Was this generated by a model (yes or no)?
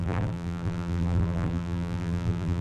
yes